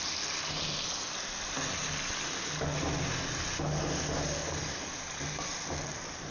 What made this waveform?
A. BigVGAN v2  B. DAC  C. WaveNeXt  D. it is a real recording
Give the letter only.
D